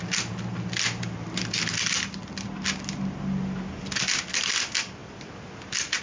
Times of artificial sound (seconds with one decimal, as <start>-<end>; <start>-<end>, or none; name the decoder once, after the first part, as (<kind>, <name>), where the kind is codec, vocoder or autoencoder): none